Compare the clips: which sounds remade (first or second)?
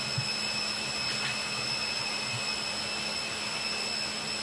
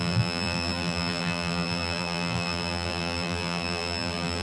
second